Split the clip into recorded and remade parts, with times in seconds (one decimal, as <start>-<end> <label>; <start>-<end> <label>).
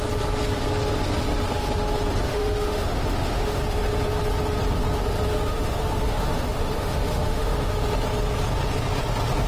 0.0-2.3 recorded; 2.3-3.6 remade; 3.6-5.3 recorded; 5.3-7.7 remade; 7.7-9.5 recorded